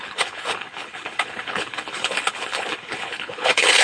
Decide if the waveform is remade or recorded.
remade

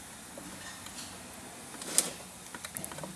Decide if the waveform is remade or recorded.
recorded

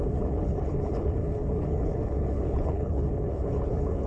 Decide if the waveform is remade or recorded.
remade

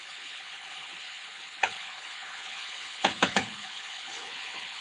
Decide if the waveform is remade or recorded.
remade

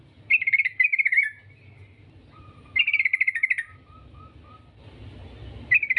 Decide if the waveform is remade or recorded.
recorded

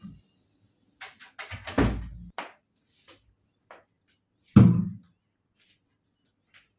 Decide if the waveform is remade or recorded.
recorded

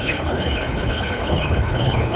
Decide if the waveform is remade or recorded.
remade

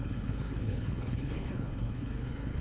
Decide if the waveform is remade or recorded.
remade